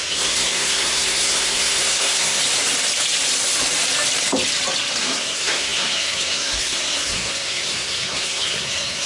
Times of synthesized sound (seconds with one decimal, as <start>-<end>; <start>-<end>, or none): 0.0-2.4; 5.0-9.1